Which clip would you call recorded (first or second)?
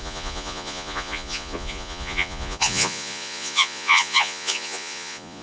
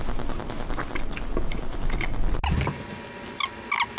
second